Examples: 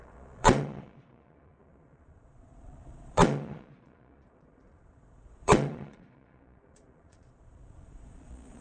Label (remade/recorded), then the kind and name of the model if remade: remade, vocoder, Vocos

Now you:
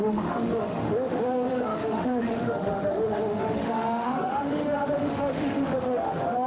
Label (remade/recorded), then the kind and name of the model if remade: remade, autoencoder, DAC-VAE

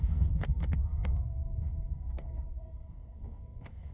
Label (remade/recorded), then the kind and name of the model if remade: remade, codec, SNAC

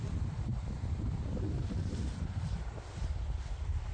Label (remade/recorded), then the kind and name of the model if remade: recorded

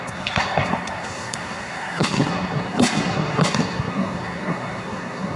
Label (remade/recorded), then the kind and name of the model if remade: remade, codec, SNAC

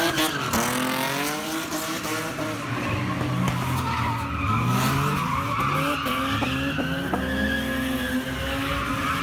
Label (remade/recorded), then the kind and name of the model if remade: recorded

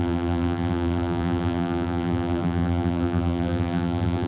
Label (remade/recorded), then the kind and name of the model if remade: remade, vocoder, BigVGAN v2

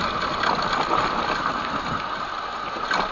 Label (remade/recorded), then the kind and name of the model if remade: recorded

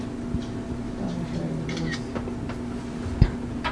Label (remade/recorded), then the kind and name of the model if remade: recorded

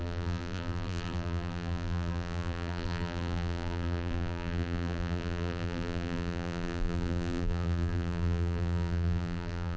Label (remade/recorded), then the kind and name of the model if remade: remade, vocoder, BigVGAN v2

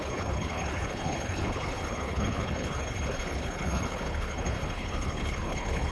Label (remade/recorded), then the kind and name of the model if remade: remade, codec, HILCodec